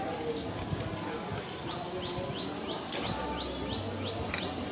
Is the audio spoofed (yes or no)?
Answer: no